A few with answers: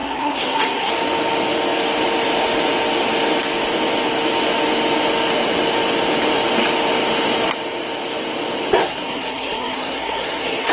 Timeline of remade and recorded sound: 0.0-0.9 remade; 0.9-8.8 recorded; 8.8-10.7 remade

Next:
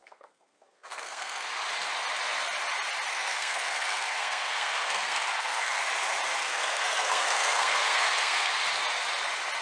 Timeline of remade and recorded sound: 0.0-1.5 remade; 1.5-3.1 recorded; 3.1-5.8 remade; 5.8-6.4 recorded; 6.4-8.5 remade; 8.5-9.6 recorded

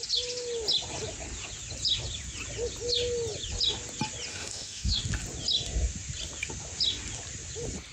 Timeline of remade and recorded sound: 0.0-4.3 recorded; 4.3-5.0 remade; 5.0-7.9 recorded

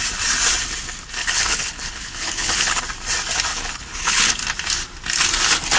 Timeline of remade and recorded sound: 0.0-1.2 recorded; 1.2-2.8 remade; 2.8-3.5 recorded; 3.5-4.3 remade; 4.3-5.8 recorded